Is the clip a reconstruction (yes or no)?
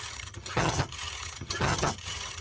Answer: yes